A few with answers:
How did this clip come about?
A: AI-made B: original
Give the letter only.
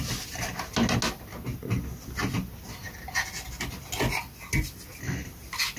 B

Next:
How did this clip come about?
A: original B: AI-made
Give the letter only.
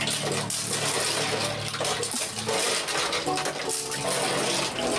A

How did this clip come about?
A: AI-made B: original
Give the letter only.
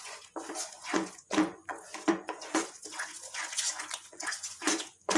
A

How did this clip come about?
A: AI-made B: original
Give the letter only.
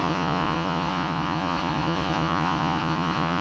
A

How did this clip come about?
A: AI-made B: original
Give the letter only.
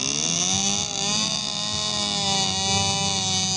B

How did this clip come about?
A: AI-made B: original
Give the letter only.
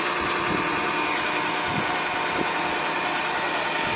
B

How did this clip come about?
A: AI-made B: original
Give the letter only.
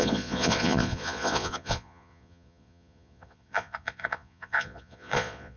A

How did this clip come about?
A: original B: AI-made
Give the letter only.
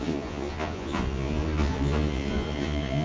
B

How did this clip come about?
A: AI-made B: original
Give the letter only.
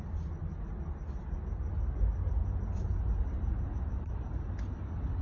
B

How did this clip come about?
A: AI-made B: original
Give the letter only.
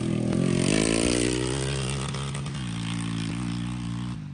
B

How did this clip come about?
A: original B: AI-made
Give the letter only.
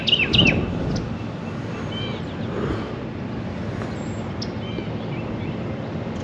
A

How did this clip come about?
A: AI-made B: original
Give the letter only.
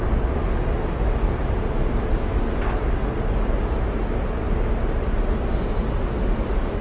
B